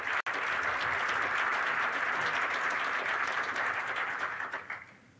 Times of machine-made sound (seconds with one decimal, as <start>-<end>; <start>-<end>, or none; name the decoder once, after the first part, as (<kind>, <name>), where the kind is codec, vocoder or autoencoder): 1.5-4.6 (vocoder, BigVGAN v2)